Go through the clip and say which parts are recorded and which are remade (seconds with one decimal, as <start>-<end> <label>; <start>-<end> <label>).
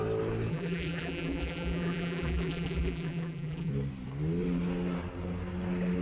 0.0-0.5 recorded; 0.5-3.7 remade; 3.7-6.0 recorded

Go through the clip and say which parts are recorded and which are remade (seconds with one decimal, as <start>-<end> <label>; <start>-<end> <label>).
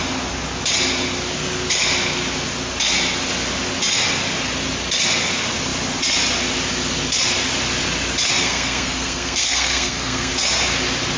0.0-8.4 recorded; 8.4-10.3 remade; 10.3-11.2 recorded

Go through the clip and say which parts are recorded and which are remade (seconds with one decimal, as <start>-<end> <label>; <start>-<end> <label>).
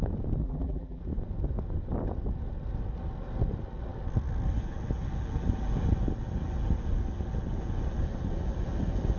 0.0-0.4 recorded; 0.4-1.0 remade; 1.0-9.2 recorded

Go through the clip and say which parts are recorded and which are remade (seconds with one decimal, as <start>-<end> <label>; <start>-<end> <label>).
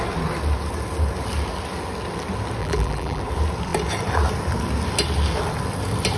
0.0-2.6 recorded; 2.6-3.2 remade; 3.2-6.2 recorded